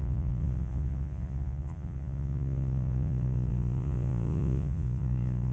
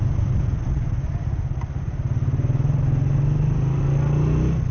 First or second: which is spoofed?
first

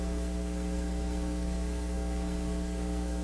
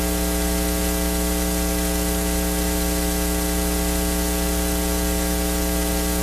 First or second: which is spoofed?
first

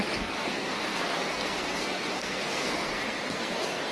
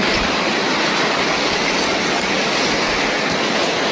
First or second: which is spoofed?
first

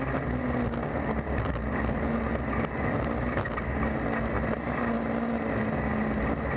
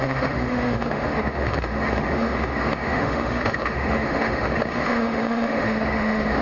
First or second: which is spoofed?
second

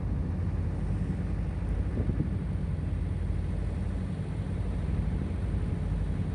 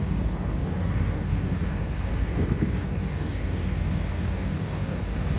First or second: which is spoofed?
second